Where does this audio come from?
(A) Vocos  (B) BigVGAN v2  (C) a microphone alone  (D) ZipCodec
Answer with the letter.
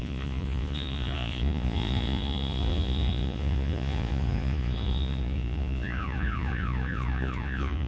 A